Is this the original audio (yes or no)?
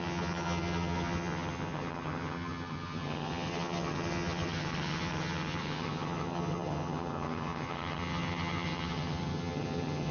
no